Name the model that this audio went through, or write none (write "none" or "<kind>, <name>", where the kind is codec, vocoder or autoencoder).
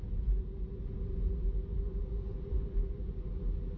none